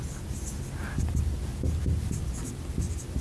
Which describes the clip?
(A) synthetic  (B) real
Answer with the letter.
B